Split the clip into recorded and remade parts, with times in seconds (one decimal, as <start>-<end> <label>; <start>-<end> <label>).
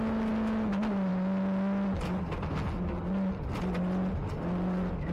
0.0-5.1 recorded